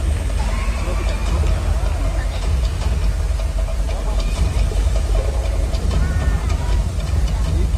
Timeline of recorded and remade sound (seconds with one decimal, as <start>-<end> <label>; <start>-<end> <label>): 0.0-3.7 recorded; 3.7-7.3 remade; 7.3-7.8 recorded